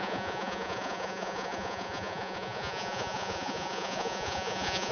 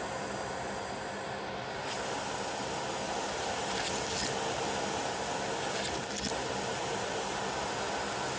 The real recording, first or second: second